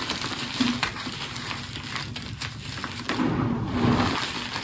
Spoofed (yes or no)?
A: no